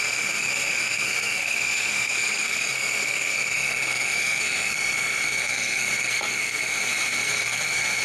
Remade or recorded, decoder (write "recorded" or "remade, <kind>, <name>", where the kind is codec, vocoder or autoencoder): remade, codec, SNAC